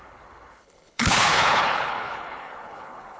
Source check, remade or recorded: remade